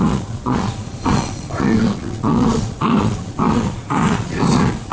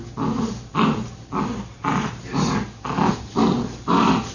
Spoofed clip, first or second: first